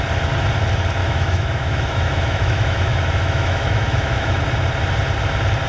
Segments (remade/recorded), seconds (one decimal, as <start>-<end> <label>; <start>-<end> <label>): 0.0-1.0 recorded; 1.0-4.4 remade; 4.4-5.7 recorded